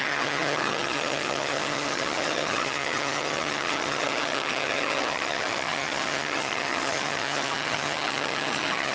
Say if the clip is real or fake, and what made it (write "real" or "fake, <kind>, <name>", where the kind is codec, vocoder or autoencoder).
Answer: fake, vocoder, HiFi-GAN